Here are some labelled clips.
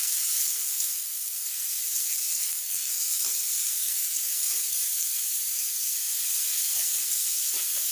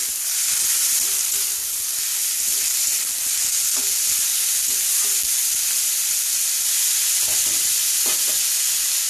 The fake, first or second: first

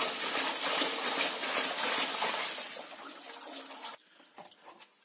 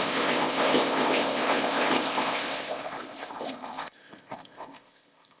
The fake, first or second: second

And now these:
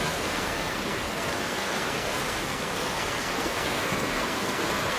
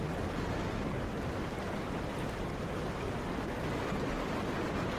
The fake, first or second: first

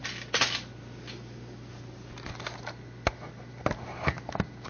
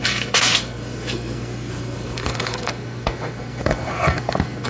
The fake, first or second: second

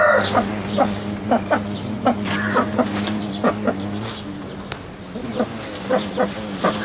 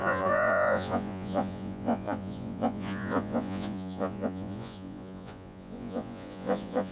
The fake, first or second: second